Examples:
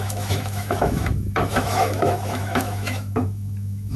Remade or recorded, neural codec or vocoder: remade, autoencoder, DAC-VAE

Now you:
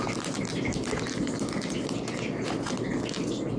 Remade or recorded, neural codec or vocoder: recorded